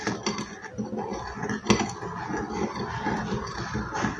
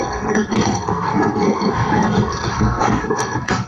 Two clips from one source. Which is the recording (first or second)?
first